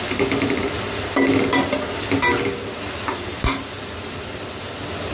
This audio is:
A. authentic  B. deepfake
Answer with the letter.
A